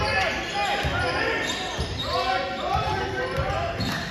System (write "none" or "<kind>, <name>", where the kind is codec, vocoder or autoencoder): none